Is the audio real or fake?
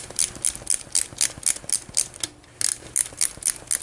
real